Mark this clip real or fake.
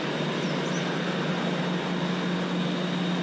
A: real